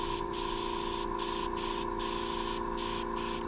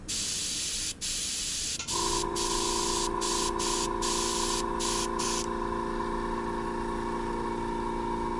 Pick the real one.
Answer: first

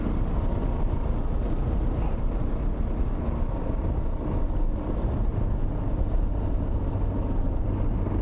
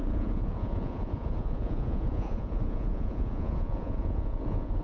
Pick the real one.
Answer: first